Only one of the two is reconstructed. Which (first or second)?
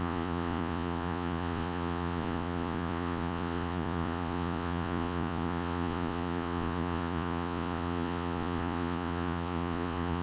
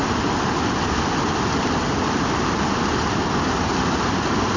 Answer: first